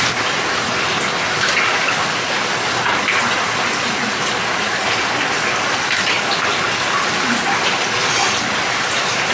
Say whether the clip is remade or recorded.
recorded